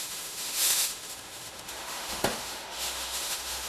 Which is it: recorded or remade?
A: remade